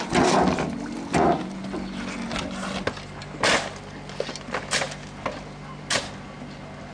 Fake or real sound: real